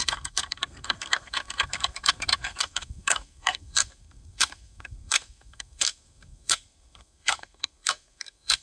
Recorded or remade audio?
remade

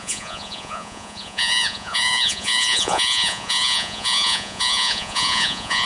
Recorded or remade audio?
remade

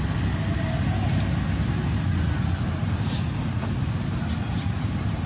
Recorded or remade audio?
recorded